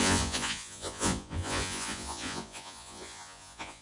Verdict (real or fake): fake